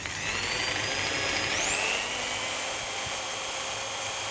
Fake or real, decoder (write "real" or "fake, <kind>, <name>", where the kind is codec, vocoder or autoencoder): real